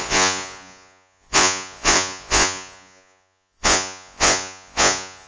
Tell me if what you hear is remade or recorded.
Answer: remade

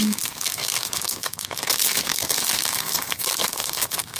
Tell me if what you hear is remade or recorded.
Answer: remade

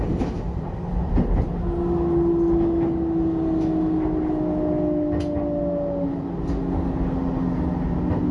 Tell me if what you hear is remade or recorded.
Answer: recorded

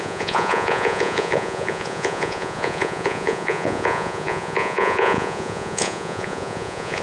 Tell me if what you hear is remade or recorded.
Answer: remade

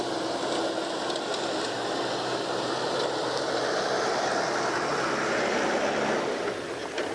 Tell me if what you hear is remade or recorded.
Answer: remade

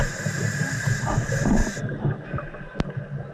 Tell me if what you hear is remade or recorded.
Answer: recorded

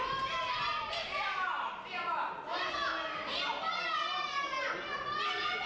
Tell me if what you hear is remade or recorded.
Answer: recorded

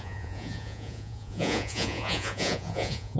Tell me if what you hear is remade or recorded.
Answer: remade